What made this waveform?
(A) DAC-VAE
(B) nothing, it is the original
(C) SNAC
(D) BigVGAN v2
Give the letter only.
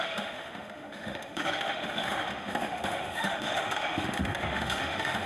A